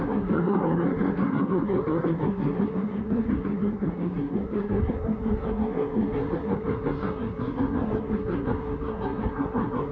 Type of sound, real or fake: fake